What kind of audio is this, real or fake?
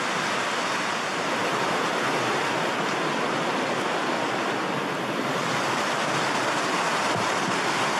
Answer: real